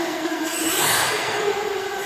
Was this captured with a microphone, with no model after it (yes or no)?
no